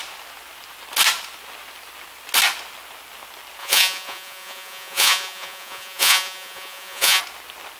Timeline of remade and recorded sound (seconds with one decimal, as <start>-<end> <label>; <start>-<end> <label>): 0.0-3.6 recorded; 3.6-7.2 remade; 7.2-7.8 recorded